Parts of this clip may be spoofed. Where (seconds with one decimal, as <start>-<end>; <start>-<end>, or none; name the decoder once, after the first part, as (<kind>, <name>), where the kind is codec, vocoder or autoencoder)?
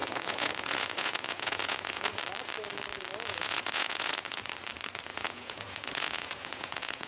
0.0-2.2 (vocoder, Vocos); 3.3-4.4; 5.1-7.1